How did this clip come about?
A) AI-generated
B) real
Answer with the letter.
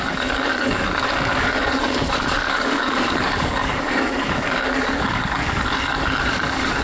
A